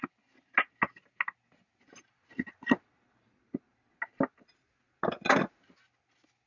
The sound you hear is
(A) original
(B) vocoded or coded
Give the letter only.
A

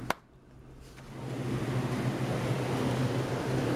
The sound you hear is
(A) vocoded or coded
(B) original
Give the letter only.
B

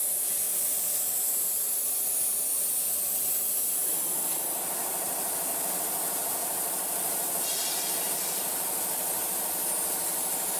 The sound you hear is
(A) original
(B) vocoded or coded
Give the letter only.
A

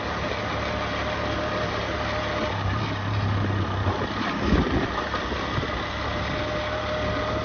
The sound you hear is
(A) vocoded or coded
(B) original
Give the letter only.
B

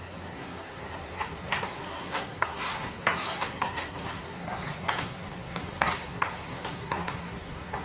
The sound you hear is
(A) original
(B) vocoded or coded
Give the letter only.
B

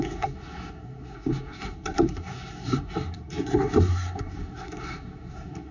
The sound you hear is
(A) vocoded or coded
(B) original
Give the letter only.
A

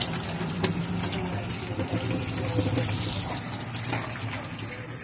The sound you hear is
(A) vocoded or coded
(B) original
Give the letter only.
B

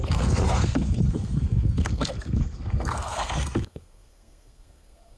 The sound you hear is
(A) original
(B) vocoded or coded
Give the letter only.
B